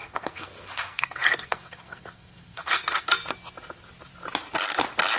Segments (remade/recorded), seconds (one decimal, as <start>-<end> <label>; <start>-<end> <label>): 0.0-3.1 remade; 3.1-5.2 recorded